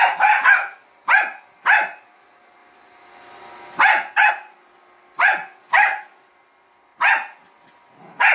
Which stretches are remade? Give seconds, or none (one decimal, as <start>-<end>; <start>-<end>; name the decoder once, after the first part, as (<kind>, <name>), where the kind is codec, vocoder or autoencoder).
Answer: none

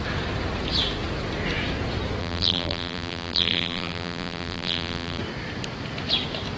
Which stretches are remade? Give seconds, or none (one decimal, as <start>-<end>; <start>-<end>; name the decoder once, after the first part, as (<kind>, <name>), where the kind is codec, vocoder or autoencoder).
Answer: 2.2-5.2 (vocoder, BigVGAN v2)

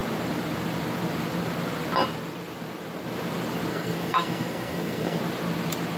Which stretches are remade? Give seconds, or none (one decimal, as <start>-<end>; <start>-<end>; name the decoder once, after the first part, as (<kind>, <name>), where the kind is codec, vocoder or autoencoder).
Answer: 3.7-5.2 (codec, SNAC)

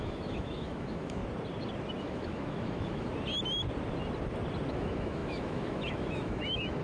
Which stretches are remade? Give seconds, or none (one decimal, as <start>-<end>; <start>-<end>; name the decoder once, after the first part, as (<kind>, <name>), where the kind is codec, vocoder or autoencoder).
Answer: 0.0-1.2 (autoencoder, DAC-VAE); 1.9-3.1; 4.7-6.8

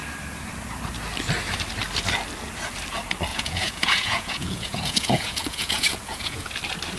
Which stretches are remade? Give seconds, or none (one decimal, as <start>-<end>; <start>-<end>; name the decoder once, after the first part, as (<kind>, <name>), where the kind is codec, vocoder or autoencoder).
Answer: 3.3-6.5 (vocoder, Vocos)

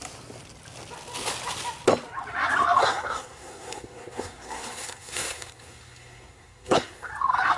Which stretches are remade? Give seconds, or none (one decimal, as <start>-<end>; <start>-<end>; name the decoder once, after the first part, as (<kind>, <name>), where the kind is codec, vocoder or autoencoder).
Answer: 2.8-7.1 (codec, SNAC)

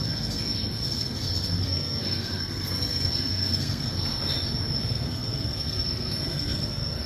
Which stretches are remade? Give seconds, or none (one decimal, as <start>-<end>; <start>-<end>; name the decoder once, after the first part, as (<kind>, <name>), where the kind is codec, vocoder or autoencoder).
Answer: 0.0-4.2 (codec, SNAC); 4.8-7.1

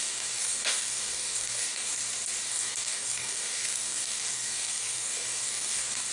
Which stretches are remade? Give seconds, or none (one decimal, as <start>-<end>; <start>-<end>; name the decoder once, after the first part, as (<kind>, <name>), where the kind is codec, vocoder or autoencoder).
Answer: 0.0-2.0 (codec, DAC); 2.5-6.1